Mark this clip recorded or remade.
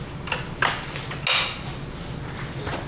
recorded